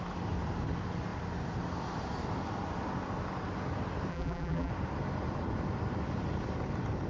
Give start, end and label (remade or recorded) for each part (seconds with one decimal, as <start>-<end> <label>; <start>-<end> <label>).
0.0-4.1 recorded; 4.1-4.7 remade; 4.7-7.1 recorded